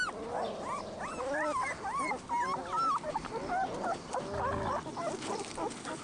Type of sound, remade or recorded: recorded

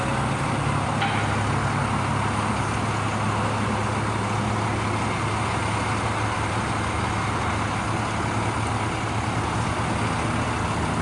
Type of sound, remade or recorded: recorded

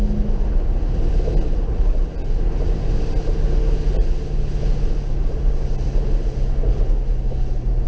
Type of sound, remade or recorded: recorded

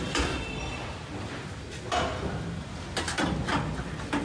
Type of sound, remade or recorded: recorded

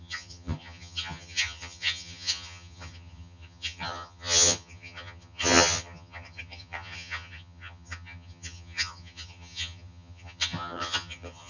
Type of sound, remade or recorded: remade